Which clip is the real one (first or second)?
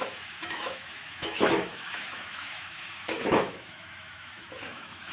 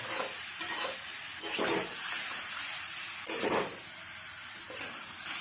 second